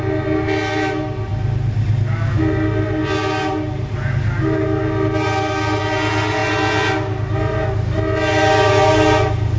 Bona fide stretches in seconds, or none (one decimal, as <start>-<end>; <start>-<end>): 0.0-9.6